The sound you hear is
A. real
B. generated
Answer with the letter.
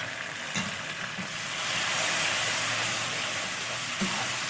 A